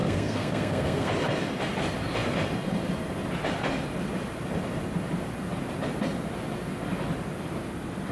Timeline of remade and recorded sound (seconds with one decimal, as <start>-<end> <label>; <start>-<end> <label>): 0.0-1.1 remade; 1.1-8.1 recorded